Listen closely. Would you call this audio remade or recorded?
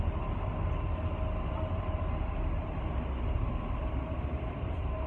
remade